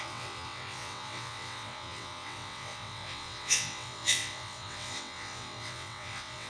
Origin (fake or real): fake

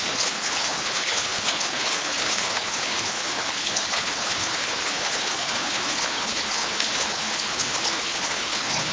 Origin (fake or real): fake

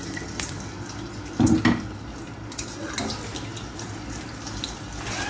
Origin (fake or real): real